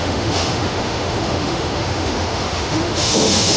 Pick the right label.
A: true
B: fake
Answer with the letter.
B